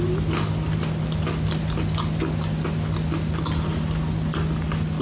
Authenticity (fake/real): real